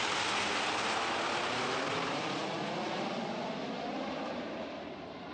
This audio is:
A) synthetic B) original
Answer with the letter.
B